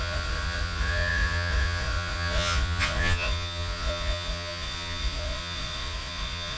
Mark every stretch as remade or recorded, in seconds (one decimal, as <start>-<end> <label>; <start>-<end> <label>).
0.0-6.6 remade